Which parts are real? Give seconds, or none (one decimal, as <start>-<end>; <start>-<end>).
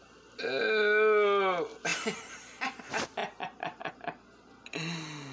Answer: 0.0-5.3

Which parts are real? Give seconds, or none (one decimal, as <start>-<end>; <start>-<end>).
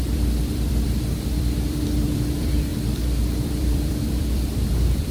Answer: none